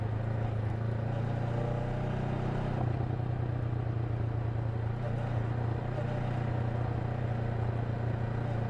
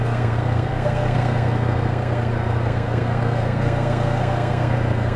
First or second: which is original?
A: first